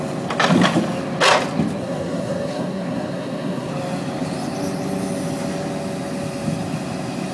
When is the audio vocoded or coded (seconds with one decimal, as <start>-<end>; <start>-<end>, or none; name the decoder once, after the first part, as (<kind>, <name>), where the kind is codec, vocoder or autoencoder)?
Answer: 1.8-3.7 (codec, SNAC)